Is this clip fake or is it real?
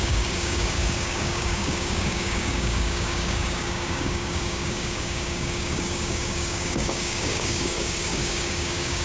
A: fake